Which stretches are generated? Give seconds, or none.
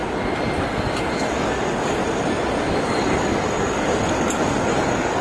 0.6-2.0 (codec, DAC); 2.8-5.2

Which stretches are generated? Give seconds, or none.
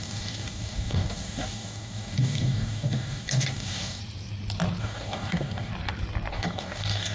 0.0-4.0 (codec, DAC); 4.8-5.7; 6.3-7.1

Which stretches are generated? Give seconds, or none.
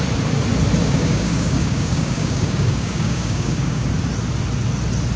0.8-3.9 (codec, DAC)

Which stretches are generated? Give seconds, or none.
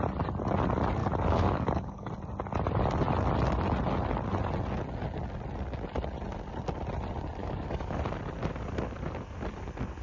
1.0-2.1 (codec, DAC); 7.4-8.0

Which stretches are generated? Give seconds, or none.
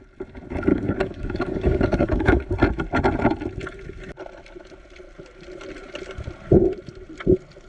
0.7-2.5 (codec, DAC)